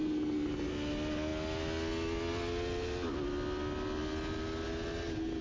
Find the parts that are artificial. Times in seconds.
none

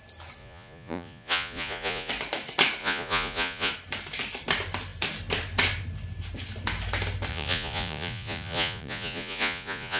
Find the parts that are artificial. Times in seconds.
0.4-2.1 (vocoder, Vocos); 2.8-3.7; 7.3-10.0

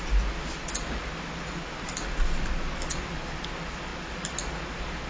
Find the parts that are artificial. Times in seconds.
none

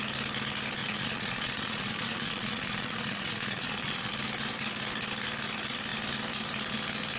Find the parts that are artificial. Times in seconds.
0.8-4.1 (vocoder, Vocos)

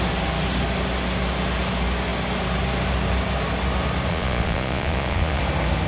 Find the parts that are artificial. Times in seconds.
4.1-5.4 (vocoder, Vocos)

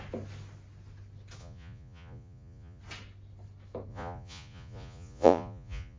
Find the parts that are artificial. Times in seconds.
1.4-2.8 (vocoder, Vocos); 3.9-6.0

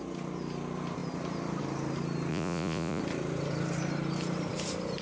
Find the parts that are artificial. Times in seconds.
2.3-3.0 (vocoder, Vocos)